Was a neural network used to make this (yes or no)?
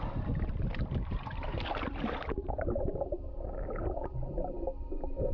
no